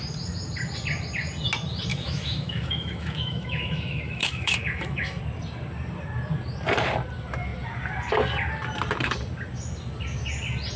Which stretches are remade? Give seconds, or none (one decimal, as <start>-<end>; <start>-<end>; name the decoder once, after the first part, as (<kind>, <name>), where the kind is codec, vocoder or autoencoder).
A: 1.9-5.2 (autoencoder, DAC-VAE)